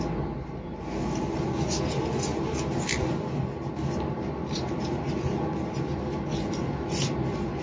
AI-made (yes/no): no